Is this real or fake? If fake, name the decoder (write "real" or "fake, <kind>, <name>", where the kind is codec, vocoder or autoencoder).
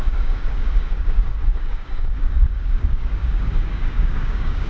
fake, codec, DAC